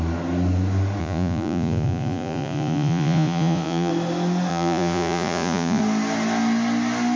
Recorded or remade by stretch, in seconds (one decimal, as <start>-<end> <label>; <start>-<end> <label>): 0.0-1.0 recorded; 1.0-3.9 remade; 3.9-4.5 recorded; 4.5-5.8 remade; 5.8-7.2 recorded